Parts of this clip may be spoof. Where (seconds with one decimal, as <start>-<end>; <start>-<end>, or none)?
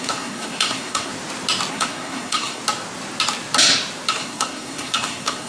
0.0-1.1; 1.7-2.6; 4.1-5.5